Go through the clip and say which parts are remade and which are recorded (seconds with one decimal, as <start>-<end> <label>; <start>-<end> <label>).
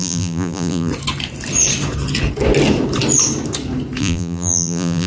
0.0-0.9 remade; 0.9-4.0 recorded; 4.0-5.1 remade